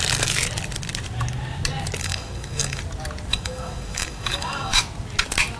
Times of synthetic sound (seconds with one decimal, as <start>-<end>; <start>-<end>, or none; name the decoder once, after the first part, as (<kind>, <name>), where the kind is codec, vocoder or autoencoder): 2.0-2.8 (codec, DAC); 3.3-4.8